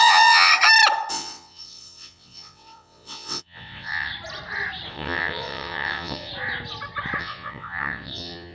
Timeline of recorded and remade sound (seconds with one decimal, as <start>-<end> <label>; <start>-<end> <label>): 0.0-0.5 remade; 0.5-1.1 recorded; 1.1-4.1 remade; 4.1-4.9 recorded; 4.9-6.3 remade; 6.3-7.2 recorded; 7.2-8.5 remade